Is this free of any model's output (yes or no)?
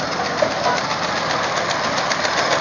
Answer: yes